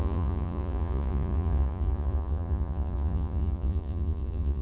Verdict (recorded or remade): remade